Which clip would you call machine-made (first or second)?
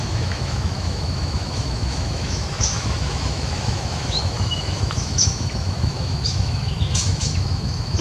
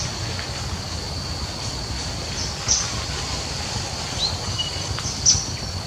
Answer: first